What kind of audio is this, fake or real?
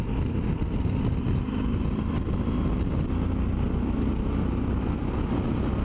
real